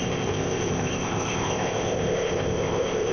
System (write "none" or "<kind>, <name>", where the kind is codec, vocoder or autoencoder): codec, ZipCodec